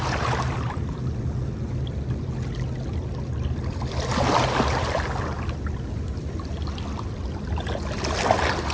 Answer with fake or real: real